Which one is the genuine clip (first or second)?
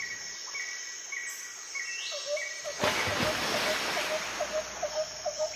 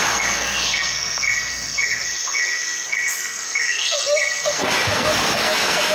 first